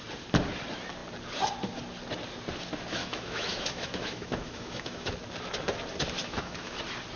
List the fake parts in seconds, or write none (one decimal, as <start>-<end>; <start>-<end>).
3.0-5.1; 6.2-6.8